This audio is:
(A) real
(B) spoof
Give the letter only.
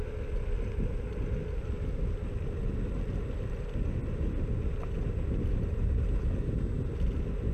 A